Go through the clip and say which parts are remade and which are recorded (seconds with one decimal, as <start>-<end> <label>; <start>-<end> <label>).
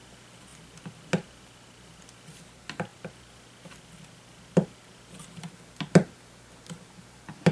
0.0-7.5 recorded